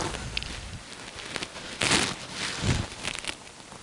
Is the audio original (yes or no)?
yes